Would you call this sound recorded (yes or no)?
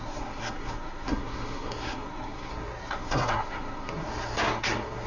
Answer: no